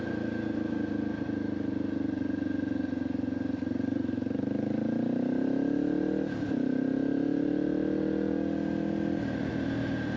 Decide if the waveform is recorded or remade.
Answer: recorded